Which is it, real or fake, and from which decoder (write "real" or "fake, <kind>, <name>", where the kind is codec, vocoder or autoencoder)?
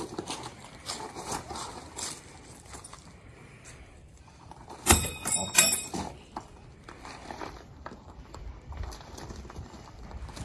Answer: fake, vocoder, BigVGAN v2